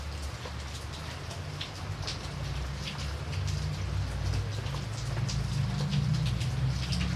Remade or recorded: recorded